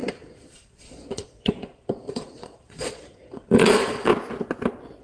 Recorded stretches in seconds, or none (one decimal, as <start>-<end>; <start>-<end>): 4.1-5.0